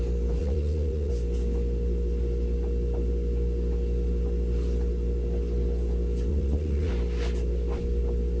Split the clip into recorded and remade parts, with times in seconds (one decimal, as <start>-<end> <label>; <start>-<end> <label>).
0.0-0.4 recorded; 0.4-1.1 remade; 1.1-6.3 recorded; 6.3-6.9 remade; 6.9-8.4 recorded